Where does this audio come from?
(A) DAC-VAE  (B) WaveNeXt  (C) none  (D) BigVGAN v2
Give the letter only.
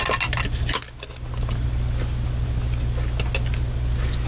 C